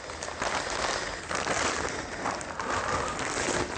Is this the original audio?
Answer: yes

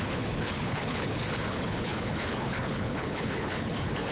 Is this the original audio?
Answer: no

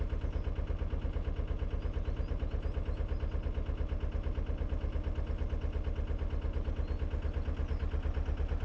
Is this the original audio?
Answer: yes